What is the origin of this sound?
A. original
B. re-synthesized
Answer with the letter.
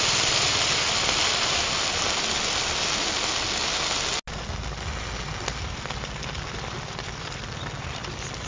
A